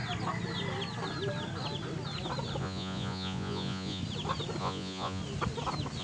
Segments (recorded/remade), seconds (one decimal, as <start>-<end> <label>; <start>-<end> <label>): 0.0-2.6 recorded; 2.6-4.0 remade; 4.0-4.6 recorded; 4.6-5.2 remade; 5.2-6.0 recorded